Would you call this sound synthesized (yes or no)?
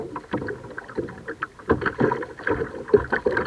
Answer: no